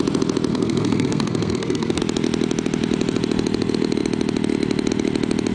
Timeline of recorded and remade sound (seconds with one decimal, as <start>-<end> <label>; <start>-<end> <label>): 0.0-0.5 recorded; 0.5-2.0 remade; 2.0-5.5 recorded